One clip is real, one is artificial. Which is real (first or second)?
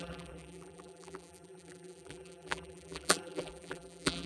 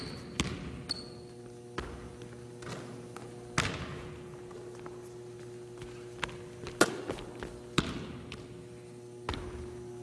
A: second